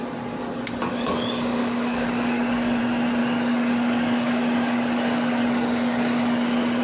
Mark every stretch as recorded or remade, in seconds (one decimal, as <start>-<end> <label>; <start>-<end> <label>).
0.0-0.4 recorded; 0.4-2.8 remade; 2.8-3.2 recorded; 3.2-6.8 remade